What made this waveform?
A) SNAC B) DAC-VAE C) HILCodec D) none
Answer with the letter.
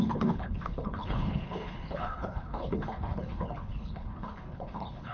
C